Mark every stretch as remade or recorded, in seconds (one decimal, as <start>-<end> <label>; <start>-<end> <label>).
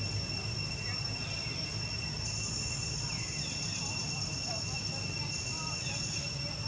0.0-6.7 recorded